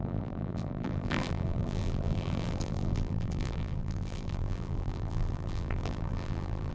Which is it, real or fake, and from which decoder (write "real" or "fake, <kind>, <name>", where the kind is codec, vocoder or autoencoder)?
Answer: fake, vocoder, BigVGAN v2